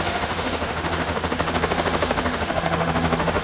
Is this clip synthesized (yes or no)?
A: yes